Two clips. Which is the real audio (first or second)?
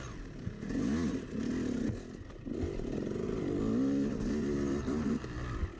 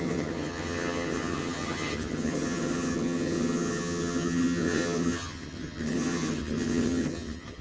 first